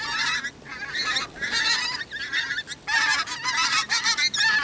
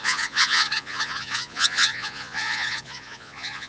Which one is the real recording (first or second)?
first